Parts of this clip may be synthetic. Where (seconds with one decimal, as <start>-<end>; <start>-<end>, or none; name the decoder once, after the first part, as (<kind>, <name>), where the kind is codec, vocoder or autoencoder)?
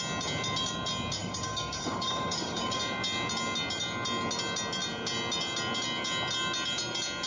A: 1.2-2.8 (codec, DAC)